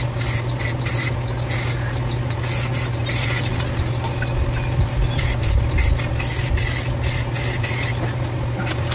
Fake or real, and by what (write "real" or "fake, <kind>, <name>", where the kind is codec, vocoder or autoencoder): real